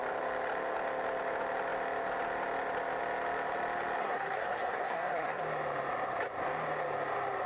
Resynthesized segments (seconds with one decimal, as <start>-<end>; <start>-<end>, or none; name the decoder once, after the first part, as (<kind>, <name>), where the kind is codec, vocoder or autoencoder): 4.0-5.4 (codec, SNAC)